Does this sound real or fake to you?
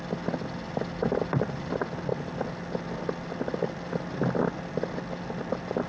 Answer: real